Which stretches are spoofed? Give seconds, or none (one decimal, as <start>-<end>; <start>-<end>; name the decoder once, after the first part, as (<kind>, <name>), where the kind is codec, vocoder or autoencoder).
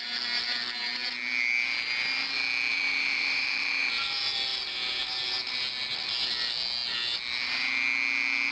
2.7-3.9 (vocoder, BigVGAN v2)